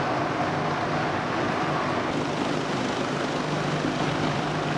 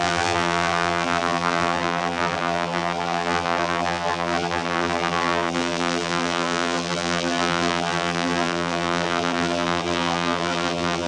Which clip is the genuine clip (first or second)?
first